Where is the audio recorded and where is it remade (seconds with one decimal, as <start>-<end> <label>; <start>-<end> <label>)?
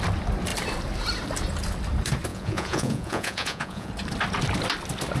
0.0-2.3 recorded; 2.3-3.9 remade; 3.9-5.2 recorded